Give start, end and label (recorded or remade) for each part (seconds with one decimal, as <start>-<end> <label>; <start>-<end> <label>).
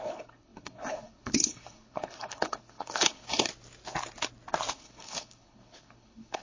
0.0-3.5 remade; 3.5-4.7 recorded; 4.7-6.4 remade